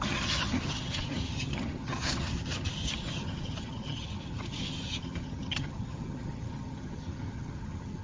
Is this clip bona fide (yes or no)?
no